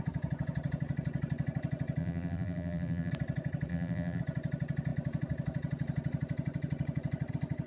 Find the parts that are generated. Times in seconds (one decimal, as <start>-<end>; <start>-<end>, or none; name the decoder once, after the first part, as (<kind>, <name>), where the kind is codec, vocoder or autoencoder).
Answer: 2.0-3.1 (vocoder, BigVGAN v2); 3.7-4.2